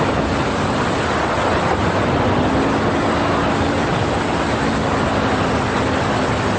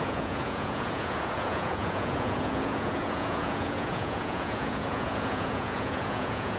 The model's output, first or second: second